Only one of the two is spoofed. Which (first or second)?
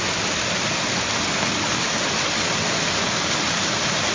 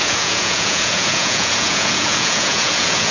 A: second